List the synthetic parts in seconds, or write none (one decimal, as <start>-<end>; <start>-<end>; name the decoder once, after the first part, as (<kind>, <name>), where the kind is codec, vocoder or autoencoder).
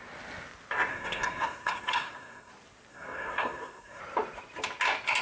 0.9-2.5 (codec, SNAC); 2.9-4.0